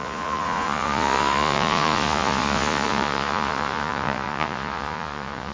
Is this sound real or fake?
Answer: fake